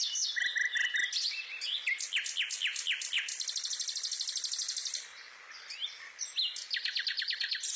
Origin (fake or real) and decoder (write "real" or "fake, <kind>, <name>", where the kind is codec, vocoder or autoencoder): real